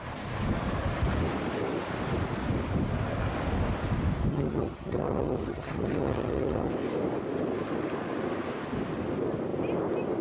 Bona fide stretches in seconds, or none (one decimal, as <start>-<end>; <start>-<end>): 0.0-4.3; 6.7-10.2